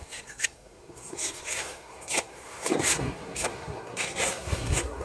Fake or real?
fake